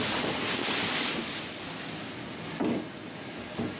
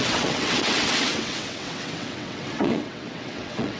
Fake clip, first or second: second